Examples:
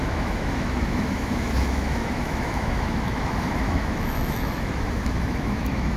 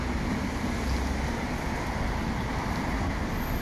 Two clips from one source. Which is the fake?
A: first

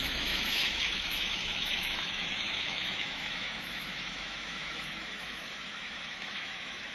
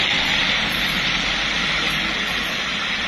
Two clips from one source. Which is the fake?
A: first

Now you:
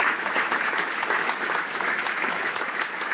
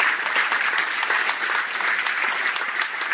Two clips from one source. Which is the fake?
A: first